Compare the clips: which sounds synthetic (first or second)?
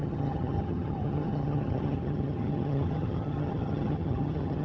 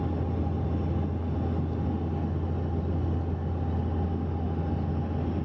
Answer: first